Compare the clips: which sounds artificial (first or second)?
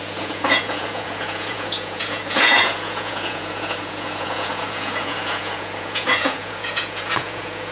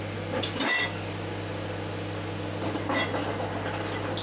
first